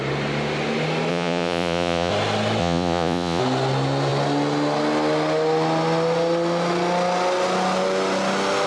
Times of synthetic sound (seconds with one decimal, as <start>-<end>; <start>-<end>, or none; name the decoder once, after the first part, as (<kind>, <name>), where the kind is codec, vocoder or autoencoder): 1.1-2.1 (vocoder, Vocos); 2.6-3.4